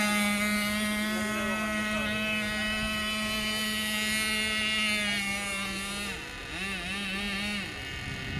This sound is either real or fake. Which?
real